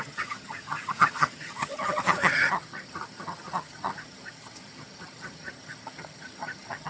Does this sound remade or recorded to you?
remade